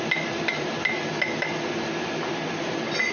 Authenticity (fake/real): real